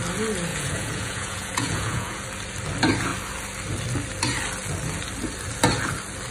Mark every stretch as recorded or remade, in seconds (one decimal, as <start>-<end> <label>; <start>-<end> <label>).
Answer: 0.0-0.5 recorded; 0.5-2.2 remade; 2.2-6.3 recorded